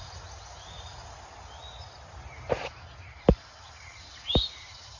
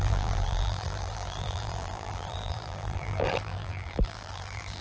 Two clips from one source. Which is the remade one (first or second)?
second